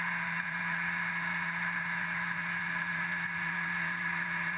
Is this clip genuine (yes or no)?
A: no